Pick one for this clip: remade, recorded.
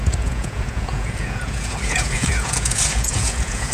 remade